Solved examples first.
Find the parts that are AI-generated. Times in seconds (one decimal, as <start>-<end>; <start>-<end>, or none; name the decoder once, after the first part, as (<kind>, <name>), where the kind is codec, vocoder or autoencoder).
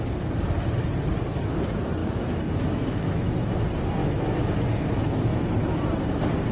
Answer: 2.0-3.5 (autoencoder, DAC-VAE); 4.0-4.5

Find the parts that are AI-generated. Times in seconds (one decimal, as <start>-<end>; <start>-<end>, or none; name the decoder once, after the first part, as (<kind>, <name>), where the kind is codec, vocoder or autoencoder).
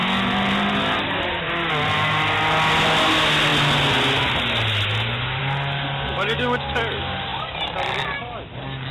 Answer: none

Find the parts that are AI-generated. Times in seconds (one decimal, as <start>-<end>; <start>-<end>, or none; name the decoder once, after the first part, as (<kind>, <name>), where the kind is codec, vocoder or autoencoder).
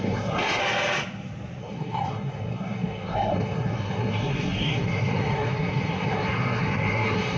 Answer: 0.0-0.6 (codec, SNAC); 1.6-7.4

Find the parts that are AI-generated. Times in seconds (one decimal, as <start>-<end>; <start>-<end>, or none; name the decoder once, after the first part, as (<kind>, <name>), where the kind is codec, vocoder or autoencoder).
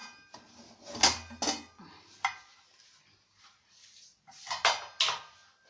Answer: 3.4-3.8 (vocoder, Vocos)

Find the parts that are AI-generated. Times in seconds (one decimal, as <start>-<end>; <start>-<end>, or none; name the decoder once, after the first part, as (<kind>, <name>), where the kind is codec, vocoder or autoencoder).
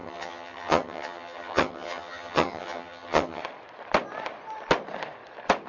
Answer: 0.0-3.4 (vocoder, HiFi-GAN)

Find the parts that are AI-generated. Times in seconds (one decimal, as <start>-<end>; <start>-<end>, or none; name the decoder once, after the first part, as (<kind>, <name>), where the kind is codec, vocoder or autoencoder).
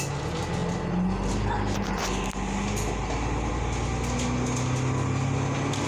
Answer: none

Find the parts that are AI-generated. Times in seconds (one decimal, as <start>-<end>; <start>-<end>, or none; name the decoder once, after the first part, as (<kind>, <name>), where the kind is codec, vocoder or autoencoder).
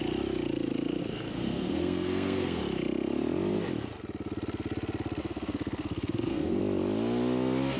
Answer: 1.0-2.6 (codec, SNAC); 5.2-6.6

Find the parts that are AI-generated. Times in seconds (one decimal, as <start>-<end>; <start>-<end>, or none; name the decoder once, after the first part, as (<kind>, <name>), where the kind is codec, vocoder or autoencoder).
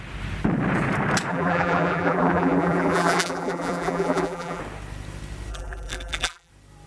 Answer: 1.3-4.6 (vocoder, BigVGAN v2); 5.5-6.5